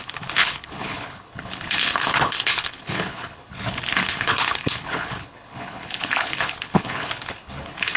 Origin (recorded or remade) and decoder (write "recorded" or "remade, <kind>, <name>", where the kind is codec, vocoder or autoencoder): remade, codec, HILCodec